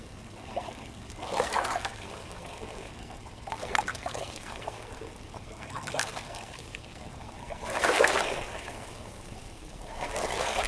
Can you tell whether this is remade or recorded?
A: remade